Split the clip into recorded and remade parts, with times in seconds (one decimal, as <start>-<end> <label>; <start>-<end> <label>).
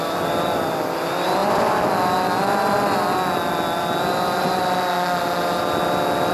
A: 0.0-6.3 recorded